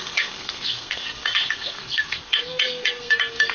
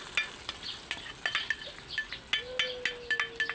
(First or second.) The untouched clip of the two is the second